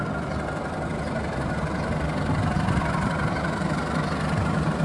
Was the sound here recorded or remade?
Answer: recorded